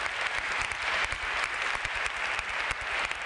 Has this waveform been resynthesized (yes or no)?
yes